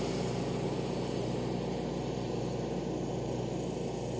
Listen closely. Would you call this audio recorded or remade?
recorded